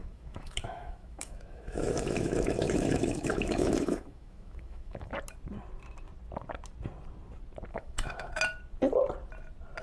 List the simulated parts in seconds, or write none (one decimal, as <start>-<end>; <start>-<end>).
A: 0.0-5.1; 7.7-8.3